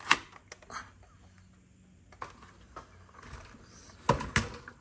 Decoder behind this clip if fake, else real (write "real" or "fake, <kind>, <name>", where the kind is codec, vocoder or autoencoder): real